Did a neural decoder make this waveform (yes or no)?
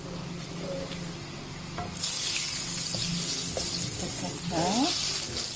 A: no